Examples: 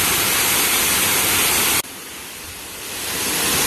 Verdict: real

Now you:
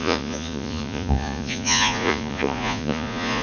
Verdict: fake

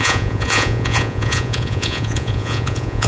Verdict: fake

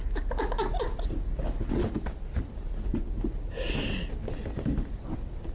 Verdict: real